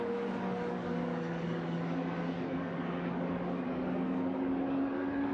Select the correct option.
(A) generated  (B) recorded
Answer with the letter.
A